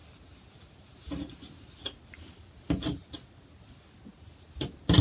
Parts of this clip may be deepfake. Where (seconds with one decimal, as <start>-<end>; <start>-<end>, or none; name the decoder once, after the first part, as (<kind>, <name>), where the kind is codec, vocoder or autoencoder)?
none